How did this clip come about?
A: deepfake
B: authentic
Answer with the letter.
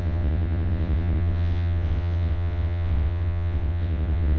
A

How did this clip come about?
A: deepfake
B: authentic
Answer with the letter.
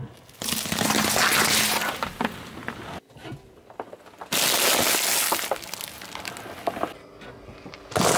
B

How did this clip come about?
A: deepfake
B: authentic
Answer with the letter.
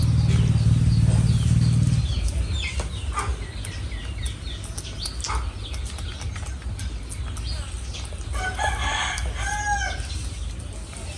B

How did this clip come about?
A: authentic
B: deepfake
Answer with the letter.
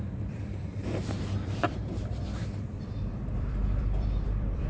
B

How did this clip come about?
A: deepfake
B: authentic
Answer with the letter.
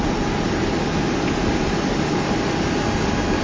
B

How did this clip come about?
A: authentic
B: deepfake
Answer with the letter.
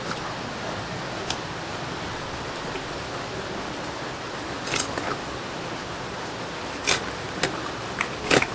A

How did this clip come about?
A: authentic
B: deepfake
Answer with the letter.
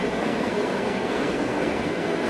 B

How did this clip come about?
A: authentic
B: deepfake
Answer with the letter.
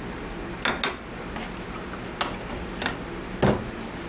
A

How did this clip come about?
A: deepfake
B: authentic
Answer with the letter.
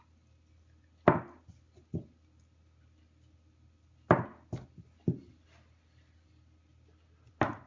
B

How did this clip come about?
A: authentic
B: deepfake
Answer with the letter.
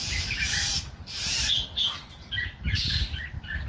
A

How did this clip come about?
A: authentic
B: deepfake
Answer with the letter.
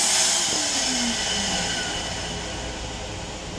A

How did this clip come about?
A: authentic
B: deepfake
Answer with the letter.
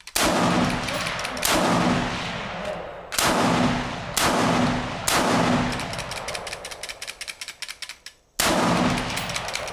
A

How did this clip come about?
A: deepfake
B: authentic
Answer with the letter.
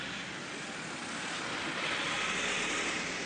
B